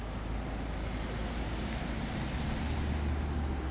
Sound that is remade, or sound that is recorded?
recorded